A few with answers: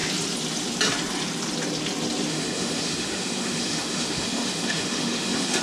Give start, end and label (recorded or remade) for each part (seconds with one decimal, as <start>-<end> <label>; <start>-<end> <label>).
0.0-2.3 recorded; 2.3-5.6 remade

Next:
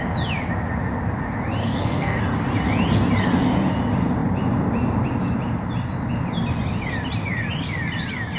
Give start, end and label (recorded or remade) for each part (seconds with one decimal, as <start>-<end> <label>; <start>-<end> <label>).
0.0-1.6 recorded; 1.6-2.2 remade; 2.2-8.4 recorded

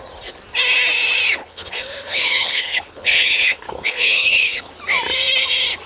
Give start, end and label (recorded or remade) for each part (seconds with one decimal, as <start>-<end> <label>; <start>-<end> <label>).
0.0-1.4 recorded; 1.4-4.7 remade; 4.7-5.9 recorded

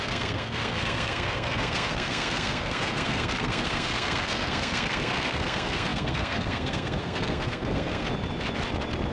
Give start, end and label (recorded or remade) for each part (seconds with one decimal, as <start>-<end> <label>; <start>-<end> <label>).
0.0-8.1 remade; 8.1-9.1 recorded